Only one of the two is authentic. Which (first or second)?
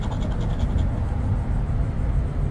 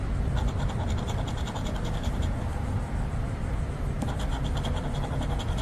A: first